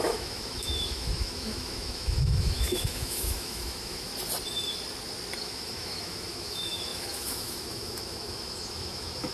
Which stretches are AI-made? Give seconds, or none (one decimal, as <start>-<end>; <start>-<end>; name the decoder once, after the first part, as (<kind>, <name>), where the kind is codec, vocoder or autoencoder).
0.0-4.1 (autoencoder, DAC-VAE); 5.4-9.3